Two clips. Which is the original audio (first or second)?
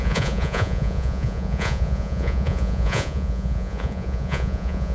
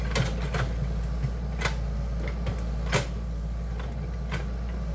second